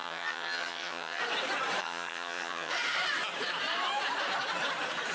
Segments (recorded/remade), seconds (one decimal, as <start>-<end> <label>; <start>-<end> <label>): 0.0-1.2 remade; 1.2-1.8 recorded; 1.8-2.7 remade; 2.7-5.1 recorded